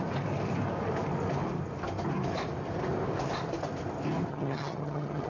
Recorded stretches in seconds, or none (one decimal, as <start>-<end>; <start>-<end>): 0.0-4.3